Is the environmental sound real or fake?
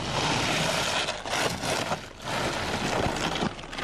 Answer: real